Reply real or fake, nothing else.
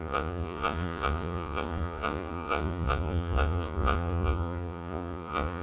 fake